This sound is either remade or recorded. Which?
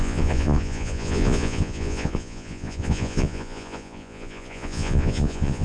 remade